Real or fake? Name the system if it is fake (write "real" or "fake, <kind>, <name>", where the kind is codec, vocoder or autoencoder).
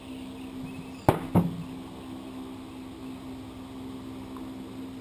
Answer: real